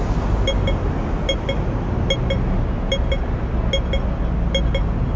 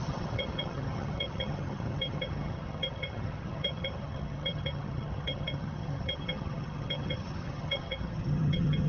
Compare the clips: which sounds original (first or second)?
first